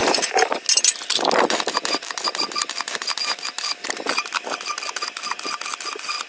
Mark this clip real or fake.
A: real